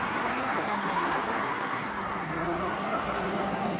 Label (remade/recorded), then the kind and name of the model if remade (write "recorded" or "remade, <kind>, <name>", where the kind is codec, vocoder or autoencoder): remade, codec, SNAC